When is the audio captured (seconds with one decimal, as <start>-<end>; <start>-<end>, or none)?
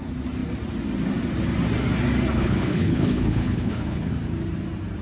0.0-2.3; 4.1-5.0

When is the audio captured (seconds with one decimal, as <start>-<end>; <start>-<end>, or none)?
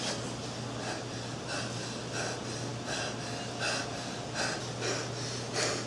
0.0-5.9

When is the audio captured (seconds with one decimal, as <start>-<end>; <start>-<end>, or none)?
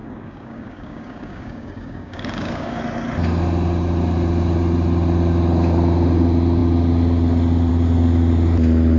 2.8-9.0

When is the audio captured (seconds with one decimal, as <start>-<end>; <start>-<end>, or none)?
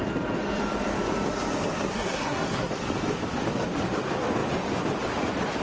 0.0-1.9; 2.7-5.6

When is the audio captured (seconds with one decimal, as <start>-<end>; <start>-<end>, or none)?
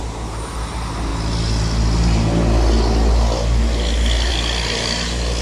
0.0-5.4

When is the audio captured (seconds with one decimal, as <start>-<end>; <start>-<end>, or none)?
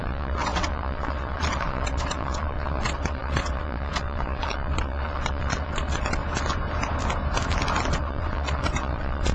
6.2-7.9